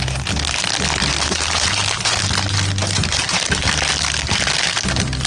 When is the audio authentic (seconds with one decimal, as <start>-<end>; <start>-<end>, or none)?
0.0-1.0; 2.2-2.8; 3.9-5.3